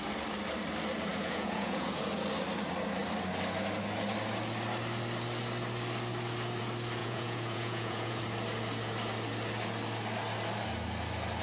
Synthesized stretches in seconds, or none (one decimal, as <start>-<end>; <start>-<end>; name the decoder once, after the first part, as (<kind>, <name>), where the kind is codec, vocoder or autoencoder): 1.1-2.0 (vocoder, Vocos); 7.0-8.2